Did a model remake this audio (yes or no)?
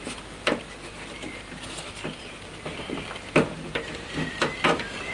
yes